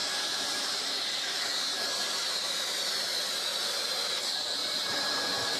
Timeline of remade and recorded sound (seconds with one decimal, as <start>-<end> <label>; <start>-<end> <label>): 0.0-2.6 remade; 2.6-4.6 recorded; 4.6-5.6 remade